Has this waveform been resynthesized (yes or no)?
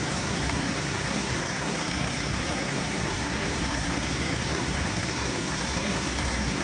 yes